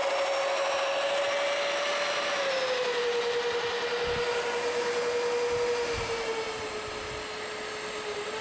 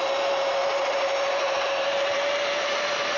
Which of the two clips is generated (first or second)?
second